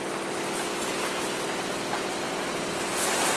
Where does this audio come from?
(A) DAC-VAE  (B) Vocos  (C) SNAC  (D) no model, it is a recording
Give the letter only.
D